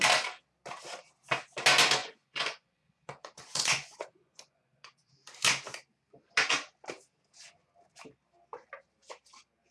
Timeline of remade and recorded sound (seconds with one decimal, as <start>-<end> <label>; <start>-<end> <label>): 0.0-2.0 recorded; 2.0-5.1 remade; 5.1-9.7 recorded